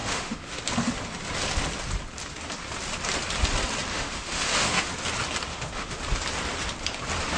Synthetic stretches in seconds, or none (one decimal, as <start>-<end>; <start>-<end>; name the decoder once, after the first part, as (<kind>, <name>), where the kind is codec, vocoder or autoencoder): 0.0-0.6 (autoencoder, DAC-VAE); 3.9-4.9; 5.5-6.0